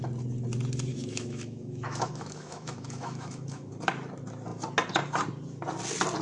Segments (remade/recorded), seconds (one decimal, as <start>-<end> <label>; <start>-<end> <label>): 0.0-0.9 recorded; 0.9-3.7 remade; 3.7-6.2 recorded